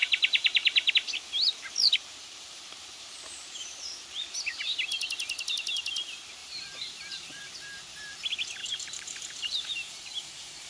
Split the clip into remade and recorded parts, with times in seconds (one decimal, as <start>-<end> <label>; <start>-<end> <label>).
0.0-0.9 remade; 0.9-2.2 recorded; 2.2-3.9 remade; 3.9-6.4 recorded; 6.4-7.4 remade; 7.4-8.6 recorded; 8.6-10.7 remade